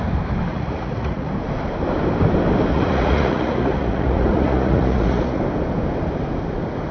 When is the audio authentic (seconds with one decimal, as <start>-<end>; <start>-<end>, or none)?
0.0-0.5; 1.3-2.7; 5.4-6.9